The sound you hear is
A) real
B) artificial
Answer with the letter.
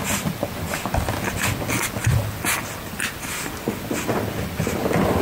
A